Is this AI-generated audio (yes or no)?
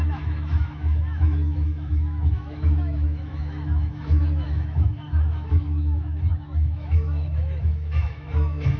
yes